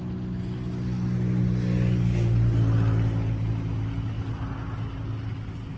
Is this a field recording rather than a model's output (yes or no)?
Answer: yes